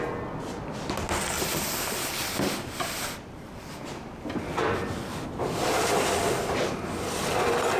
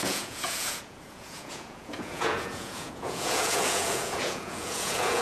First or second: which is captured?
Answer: first